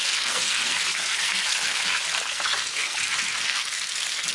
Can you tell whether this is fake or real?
fake